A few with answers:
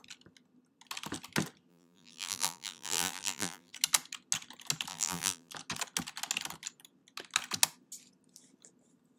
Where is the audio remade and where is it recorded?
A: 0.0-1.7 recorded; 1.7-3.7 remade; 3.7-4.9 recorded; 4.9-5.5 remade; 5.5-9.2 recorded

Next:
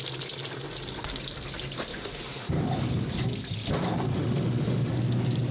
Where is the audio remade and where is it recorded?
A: 0.0-1.9 recorded; 1.9-2.5 remade; 2.5-4.1 recorded; 4.1-4.9 remade; 4.9-5.5 recorded

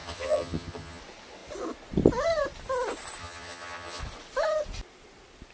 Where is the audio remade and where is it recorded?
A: 0.0-1.0 remade; 1.0-3.2 recorded; 3.2-4.0 remade; 4.0-5.5 recorded

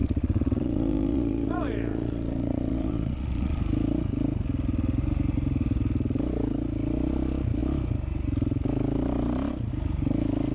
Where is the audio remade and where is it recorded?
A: 0.0-3.6 remade; 3.6-10.5 recorded